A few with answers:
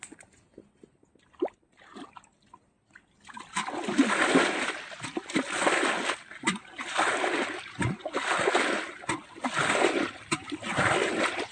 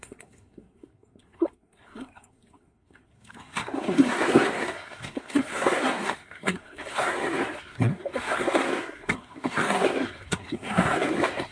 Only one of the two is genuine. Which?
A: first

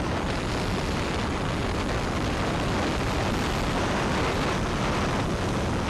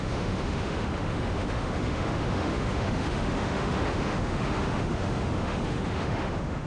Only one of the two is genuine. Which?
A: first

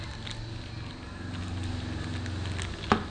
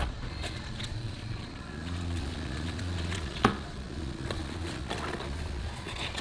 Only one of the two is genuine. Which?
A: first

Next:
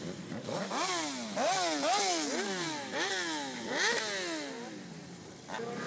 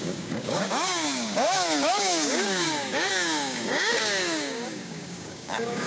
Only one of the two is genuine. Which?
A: first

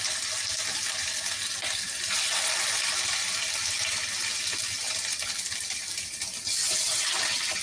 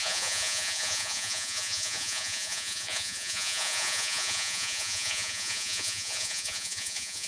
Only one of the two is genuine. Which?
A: first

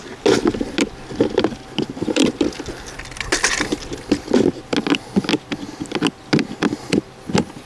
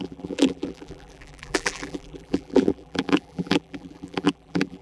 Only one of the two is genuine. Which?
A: first